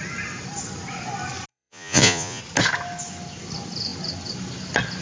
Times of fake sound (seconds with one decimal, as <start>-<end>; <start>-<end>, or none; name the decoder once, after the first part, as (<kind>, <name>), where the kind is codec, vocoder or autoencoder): 1.5-2.4 (vocoder, Vocos)